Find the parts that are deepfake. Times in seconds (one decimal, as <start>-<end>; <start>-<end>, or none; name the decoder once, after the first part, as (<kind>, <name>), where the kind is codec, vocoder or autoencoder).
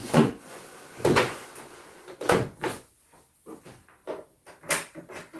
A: 0.0-3.2 (vocoder, Vocos)